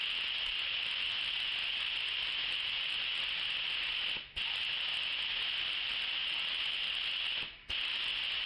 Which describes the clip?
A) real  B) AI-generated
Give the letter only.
A